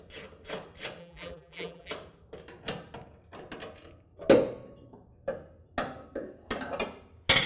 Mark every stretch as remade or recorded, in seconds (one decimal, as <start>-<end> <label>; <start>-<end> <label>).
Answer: 0.0-1.0 recorded; 1.0-1.9 remade; 1.9-7.5 recorded